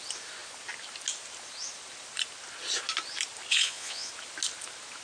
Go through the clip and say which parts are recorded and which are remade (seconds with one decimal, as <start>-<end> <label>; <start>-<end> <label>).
0.0-3.5 recorded; 3.5-4.1 remade; 4.1-5.0 recorded